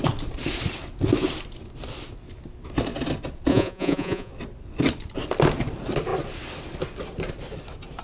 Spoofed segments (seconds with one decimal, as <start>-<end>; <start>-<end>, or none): 3.5-4.3